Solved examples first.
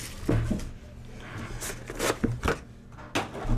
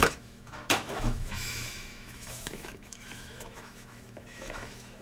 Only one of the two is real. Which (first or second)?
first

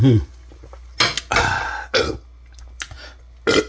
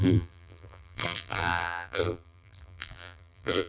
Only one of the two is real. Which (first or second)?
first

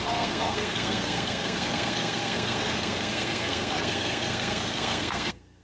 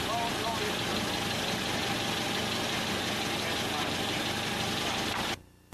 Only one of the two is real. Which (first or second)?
second